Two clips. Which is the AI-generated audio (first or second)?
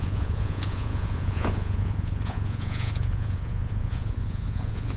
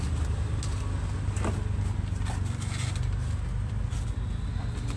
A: first